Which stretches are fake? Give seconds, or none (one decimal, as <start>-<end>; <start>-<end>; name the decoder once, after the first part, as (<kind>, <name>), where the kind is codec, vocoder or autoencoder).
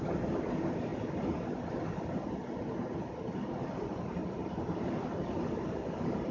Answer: none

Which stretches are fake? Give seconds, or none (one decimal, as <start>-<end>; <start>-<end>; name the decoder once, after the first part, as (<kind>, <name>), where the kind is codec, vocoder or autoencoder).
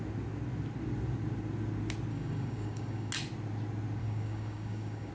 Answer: 2.1-3.1 (codec, DAC); 4.0-5.1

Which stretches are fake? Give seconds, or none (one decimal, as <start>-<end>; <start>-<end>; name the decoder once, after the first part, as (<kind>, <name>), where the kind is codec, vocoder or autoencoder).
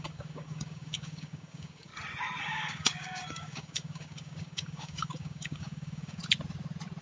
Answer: 0.0-1.9 (codec, DAC); 2.4-6.2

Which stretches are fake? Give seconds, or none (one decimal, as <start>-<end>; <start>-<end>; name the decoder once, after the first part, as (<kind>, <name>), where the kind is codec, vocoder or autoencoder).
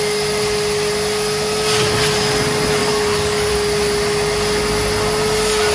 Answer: 2.8-3.5 (codec, DAC)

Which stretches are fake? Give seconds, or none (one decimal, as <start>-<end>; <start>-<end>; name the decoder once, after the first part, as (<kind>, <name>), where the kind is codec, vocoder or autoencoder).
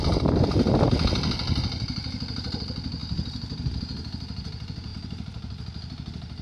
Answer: none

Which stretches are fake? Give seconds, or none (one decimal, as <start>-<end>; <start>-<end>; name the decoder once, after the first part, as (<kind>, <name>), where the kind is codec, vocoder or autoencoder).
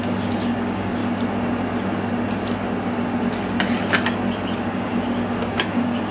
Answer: 0.0-1.0 (codec, DAC); 4.7-6.1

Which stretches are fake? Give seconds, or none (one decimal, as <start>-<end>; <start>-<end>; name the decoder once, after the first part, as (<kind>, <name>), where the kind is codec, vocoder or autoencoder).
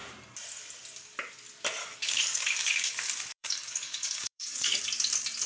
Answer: 1.8-4.8 (codec, DAC)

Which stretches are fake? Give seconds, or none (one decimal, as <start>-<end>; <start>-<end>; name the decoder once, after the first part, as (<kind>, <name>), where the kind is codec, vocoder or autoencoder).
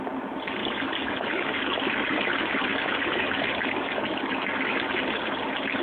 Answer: 0.6-1.8 (codec, DAC); 2.7-4.9